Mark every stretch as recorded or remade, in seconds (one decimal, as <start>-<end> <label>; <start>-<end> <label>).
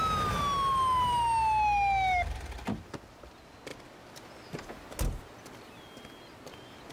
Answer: 0.0-6.9 recorded